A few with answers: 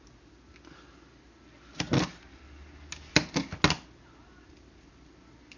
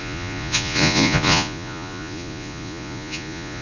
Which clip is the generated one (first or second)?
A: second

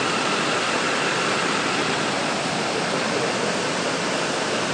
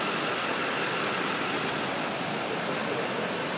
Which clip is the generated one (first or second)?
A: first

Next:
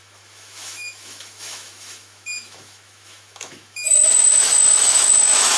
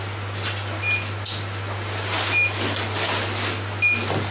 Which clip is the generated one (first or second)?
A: first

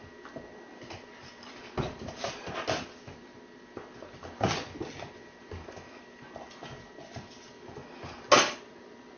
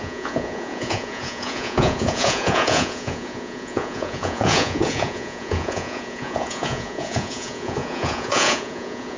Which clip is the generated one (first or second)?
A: second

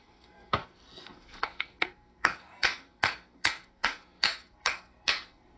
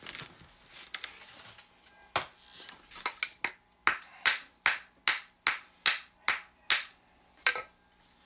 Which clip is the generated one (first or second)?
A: first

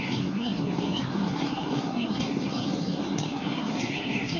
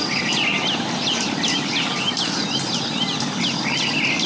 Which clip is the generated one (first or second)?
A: first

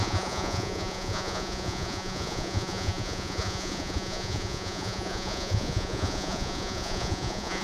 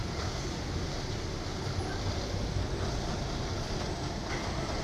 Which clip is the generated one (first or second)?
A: first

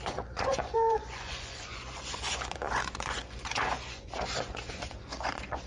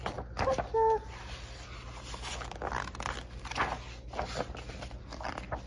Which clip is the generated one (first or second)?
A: first